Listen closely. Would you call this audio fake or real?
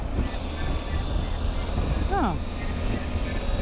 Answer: real